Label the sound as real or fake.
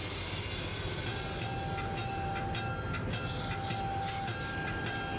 real